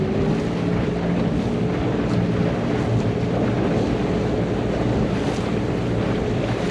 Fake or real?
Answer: real